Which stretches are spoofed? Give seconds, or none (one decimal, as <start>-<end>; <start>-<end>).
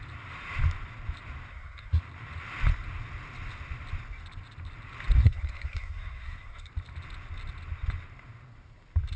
1.5-2.0; 5.2-6.7